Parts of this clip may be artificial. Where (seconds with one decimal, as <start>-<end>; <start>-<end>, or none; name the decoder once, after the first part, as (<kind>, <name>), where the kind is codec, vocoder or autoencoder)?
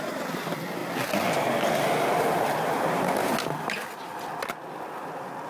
none